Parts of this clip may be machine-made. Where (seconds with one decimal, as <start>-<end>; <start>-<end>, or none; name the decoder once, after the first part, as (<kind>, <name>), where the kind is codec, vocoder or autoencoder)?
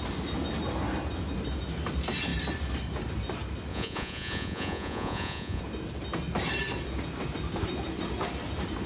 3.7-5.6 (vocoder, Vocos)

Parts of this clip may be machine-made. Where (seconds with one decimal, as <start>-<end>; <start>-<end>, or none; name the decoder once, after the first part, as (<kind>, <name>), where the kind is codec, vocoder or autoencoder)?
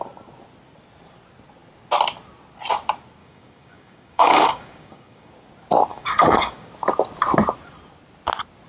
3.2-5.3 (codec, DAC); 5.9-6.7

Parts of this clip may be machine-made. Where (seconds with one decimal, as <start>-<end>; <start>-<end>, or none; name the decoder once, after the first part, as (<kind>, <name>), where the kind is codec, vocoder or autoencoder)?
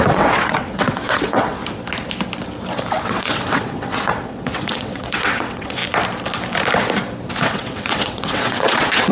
0.0-1.6 (vocoder, WaveNeXt); 3.0-5.8; 7.4-9.1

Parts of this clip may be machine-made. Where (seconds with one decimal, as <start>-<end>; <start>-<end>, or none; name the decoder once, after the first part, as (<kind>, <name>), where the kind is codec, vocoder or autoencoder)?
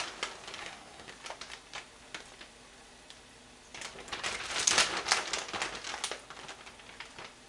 0.6-1.1 (codec, SNAC)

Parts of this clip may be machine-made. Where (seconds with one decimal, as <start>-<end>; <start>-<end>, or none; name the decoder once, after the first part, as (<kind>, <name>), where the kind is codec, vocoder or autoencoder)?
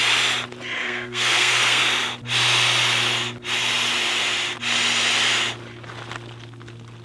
0.8-1.8 (codec, SNAC)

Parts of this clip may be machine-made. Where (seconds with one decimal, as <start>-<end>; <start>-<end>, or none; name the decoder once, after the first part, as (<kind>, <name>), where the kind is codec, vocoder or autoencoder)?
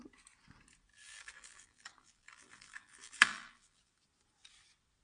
0.9-3.9 (vocoder, BigVGAN v2)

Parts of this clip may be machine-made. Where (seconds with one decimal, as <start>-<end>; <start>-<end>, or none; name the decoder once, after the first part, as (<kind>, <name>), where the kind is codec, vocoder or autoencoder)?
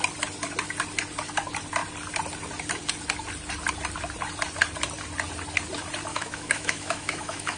6.1-7.6 (autoencoder, DAC-VAE)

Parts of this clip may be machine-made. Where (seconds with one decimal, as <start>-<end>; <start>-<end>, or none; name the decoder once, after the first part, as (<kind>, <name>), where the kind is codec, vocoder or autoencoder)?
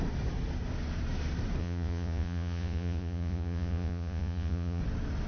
1.6-4.8 (vocoder, Vocos)